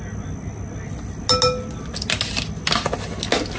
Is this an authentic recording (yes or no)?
yes